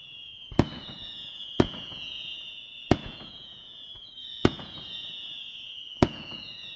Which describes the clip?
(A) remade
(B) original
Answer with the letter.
A